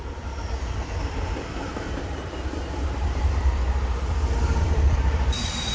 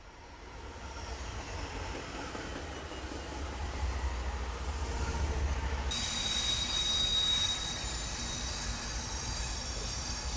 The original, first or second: second